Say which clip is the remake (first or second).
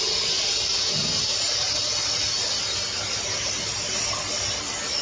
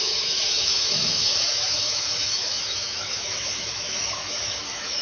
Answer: second